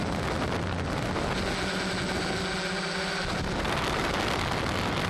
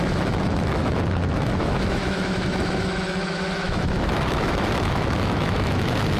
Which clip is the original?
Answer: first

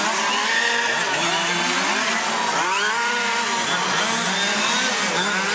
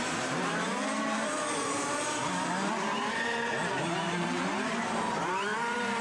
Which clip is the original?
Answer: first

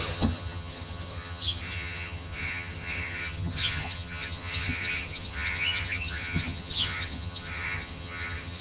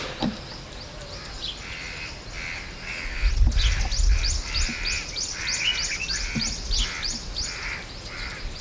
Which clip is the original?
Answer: second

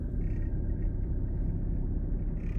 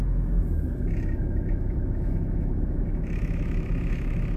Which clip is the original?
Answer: first